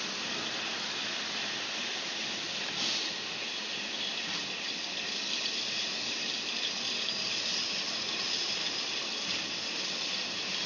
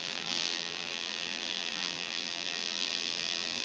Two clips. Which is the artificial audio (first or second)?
second